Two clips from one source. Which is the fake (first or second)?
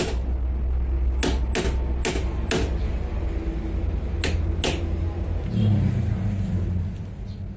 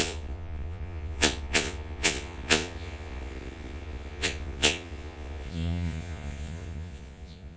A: second